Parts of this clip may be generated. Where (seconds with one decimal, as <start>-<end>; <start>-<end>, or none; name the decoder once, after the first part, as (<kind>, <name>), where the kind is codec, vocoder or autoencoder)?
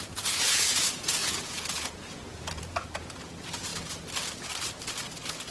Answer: 0.0-3.7 (vocoder, Vocos); 5.1-5.5